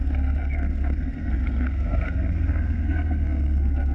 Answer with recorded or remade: remade